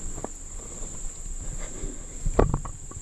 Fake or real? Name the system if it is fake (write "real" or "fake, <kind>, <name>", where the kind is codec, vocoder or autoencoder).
real